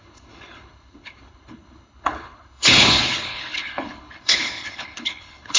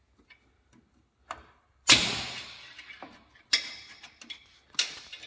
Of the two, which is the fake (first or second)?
first